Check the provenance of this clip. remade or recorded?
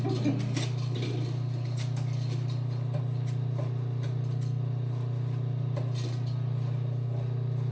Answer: recorded